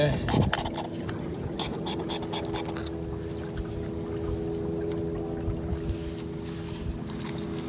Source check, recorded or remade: recorded